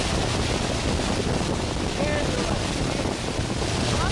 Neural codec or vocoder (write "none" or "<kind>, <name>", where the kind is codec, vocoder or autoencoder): none